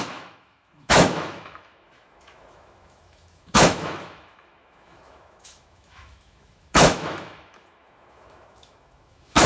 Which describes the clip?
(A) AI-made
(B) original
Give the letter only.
A